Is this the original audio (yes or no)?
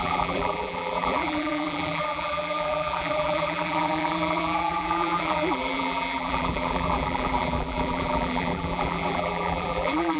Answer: no